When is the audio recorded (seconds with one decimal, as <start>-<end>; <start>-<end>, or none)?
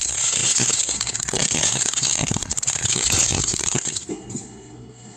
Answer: none